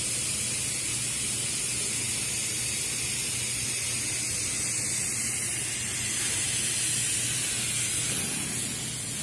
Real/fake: real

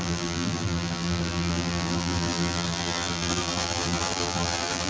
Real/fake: fake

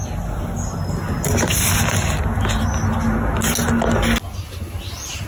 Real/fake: real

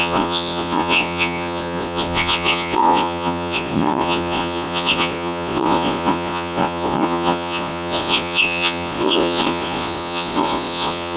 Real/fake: fake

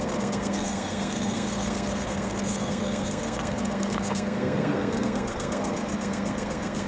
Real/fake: fake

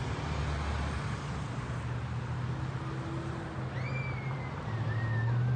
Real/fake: real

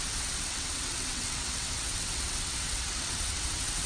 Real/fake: fake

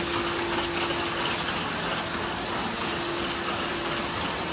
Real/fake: real